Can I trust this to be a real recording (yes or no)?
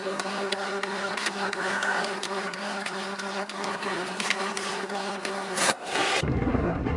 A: no